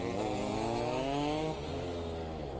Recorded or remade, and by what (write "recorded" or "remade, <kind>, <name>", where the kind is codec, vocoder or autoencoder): recorded